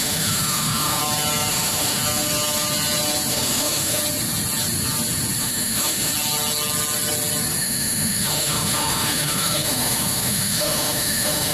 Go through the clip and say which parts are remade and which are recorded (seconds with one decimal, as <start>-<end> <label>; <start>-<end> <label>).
0.0-1.0 remade; 1.0-1.5 recorded; 1.5-2.0 remade; 2.0-3.3 recorded; 3.3-4.0 remade; 4.0-5.4 recorded; 5.4-6.1 remade; 6.1-7.6 recorded; 7.6-11.5 remade